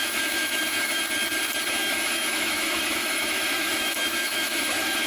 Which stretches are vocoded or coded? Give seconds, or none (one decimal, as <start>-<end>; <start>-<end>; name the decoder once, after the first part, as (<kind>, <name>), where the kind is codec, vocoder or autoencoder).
0.0-1.0 (autoencoder, DAC-VAE); 1.8-5.1